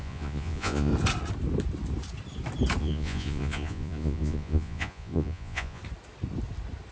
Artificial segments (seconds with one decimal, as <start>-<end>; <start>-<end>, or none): 0.0-0.9; 2.8-5.8